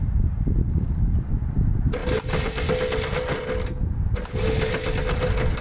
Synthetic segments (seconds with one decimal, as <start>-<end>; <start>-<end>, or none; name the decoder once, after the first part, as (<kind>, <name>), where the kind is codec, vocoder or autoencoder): none